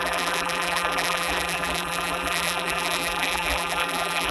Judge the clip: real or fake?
fake